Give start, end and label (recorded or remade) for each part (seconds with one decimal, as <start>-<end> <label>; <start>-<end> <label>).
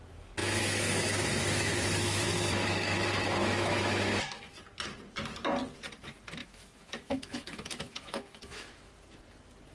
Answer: 0.0-0.4 recorded; 0.4-4.5 remade; 4.5-6.4 recorded; 6.4-8.9 remade; 8.9-9.7 recorded